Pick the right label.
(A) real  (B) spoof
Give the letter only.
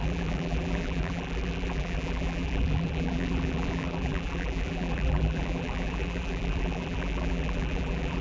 B